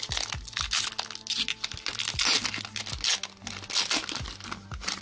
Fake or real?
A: real